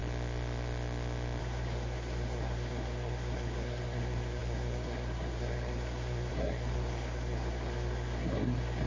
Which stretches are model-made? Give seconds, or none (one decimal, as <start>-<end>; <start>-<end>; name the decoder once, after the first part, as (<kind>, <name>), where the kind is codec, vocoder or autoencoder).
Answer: 1.4-8.9 (codec, SNAC)